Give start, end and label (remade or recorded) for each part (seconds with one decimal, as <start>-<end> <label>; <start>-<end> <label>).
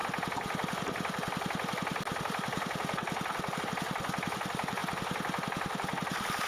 0.0-6.5 recorded